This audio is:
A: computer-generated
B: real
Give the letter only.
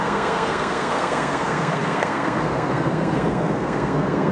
A